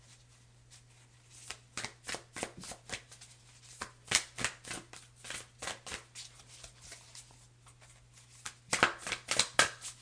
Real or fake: real